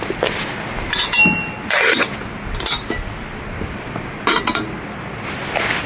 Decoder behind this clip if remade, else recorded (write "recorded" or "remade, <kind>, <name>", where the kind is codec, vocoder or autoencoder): recorded